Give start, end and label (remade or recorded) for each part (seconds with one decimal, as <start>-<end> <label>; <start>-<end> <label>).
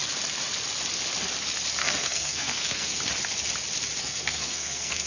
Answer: 0.0-1.8 recorded; 1.8-3.0 remade; 3.0-4.0 recorded; 4.0-5.1 remade